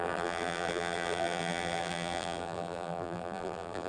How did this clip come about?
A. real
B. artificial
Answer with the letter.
B